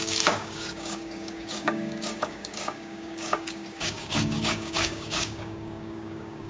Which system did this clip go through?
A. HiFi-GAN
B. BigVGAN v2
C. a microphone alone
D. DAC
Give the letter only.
D